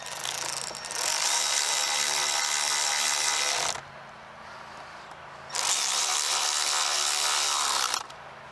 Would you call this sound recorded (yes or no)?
yes